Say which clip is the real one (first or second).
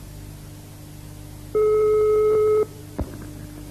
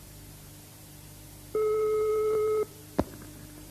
first